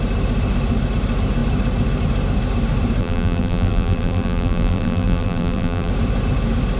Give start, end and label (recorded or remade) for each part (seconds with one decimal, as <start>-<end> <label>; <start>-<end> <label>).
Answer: 0.0-3.0 recorded; 3.0-5.9 remade; 5.9-6.8 recorded